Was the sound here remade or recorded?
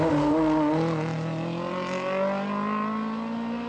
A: recorded